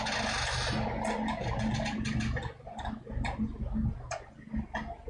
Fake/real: real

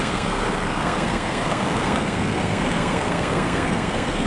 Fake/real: fake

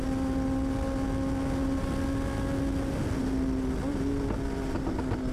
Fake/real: real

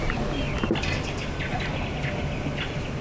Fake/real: real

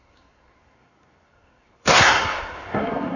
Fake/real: fake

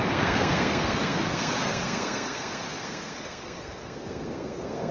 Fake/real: fake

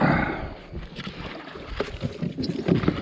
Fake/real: real